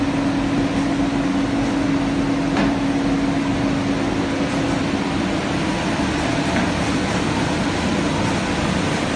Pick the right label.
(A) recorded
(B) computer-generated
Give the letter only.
A